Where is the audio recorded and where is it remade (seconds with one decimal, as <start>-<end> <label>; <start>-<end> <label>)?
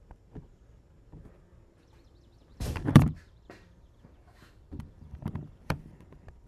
0.0-2.5 recorded; 2.5-6.0 remade; 6.0-6.5 recorded